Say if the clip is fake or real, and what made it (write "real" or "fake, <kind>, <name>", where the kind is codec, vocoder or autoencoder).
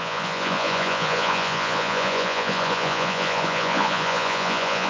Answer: fake, vocoder, Vocos